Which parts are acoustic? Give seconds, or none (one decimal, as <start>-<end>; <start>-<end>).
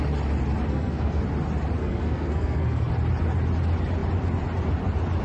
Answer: 0.0-0.7; 1.2-1.8; 2.9-5.2